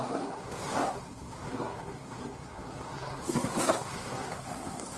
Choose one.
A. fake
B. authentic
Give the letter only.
A